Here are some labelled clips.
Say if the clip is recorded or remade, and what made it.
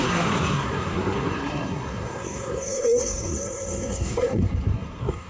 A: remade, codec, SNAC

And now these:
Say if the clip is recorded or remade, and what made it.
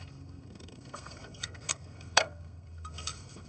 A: remade, codec, SNAC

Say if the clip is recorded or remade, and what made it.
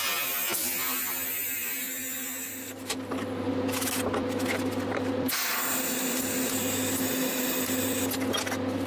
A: recorded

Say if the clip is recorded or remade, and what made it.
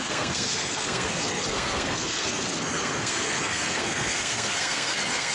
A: remade, codec, SNAC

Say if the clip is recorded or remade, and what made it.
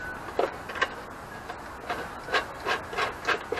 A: recorded